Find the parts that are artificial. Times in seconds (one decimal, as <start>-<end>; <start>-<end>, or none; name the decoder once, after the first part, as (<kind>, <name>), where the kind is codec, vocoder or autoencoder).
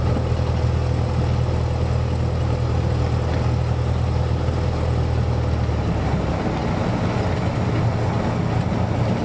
none